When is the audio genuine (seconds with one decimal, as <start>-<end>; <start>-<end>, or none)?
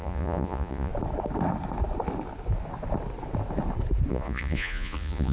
0.9-4.1